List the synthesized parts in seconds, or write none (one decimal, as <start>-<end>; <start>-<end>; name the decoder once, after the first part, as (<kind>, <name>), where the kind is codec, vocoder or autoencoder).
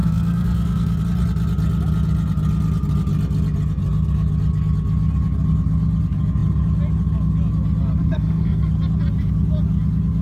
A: 0.0-1.0 (codec, SNAC); 8.0-8.7